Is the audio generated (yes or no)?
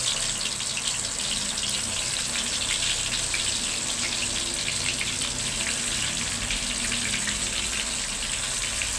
no